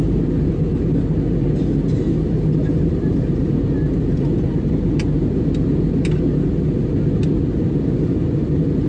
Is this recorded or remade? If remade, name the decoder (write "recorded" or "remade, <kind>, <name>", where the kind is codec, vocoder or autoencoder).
recorded